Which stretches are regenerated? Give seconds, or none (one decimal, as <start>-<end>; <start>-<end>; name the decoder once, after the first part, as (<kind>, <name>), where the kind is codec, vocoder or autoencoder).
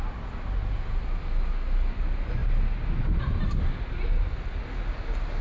none